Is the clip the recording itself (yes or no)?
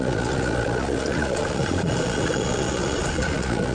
no